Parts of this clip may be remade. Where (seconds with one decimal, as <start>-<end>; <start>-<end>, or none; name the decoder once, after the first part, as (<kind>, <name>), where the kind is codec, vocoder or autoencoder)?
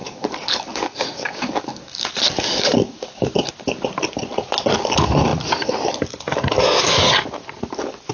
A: 0.0-3.5 (codec, DAC)